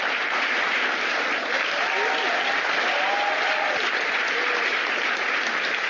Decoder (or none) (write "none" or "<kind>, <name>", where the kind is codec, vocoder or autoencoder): none